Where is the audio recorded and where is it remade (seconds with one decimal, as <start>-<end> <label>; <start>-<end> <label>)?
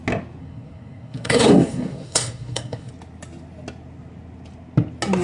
0.0-0.4 recorded; 0.4-2.9 remade; 2.9-5.2 recorded